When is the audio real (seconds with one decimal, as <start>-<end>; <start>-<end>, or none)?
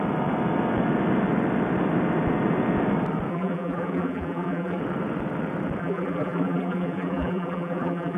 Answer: 0.0-3.3; 4.8-5.8